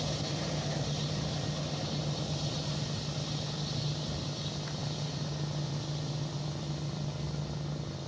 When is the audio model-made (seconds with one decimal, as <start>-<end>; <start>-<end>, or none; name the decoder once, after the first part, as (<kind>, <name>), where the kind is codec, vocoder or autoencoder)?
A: none